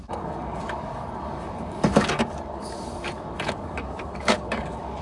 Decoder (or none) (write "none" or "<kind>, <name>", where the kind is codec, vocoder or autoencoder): codec, DAC